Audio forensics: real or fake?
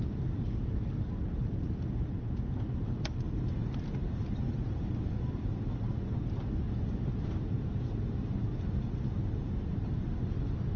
real